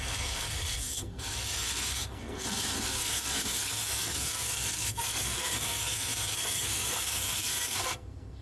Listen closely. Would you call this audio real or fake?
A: fake